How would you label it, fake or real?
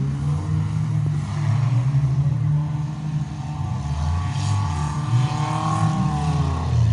real